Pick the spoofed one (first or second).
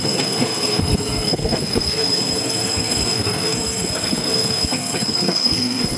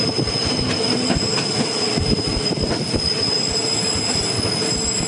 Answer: first